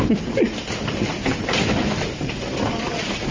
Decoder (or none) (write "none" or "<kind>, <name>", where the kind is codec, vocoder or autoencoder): none